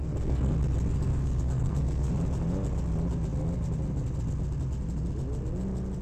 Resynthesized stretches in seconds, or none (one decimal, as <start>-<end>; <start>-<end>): 0.0-0.5; 1.1-2.1